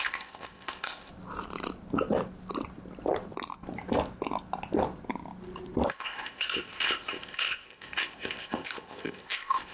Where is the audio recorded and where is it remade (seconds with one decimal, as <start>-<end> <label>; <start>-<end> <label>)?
0.0-1.1 remade; 1.1-5.9 recorded; 5.9-9.7 remade

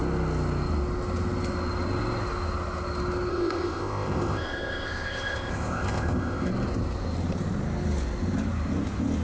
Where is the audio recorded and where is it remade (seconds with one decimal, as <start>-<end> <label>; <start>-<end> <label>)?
0.0-3.3 recorded; 3.3-6.5 remade; 6.5-9.2 recorded